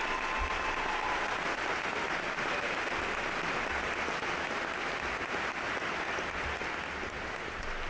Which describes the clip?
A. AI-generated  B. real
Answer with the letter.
B